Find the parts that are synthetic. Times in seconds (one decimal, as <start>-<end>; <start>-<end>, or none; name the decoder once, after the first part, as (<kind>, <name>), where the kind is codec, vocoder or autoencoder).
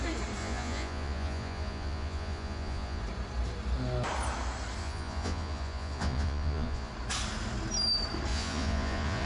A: 0.4-3.0 (vocoder, Vocos); 4.8-6.9; 8.3-9.3